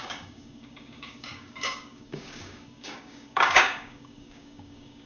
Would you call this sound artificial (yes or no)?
yes